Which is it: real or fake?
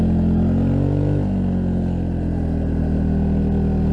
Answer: real